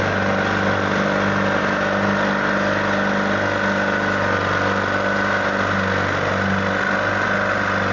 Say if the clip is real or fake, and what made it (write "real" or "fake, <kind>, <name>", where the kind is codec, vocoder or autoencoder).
real